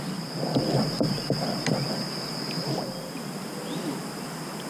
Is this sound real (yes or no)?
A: yes